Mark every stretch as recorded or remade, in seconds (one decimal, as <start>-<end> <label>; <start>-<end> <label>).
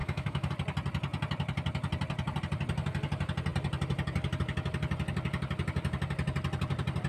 0.0-0.5 remade; 0.5-7.1 recorded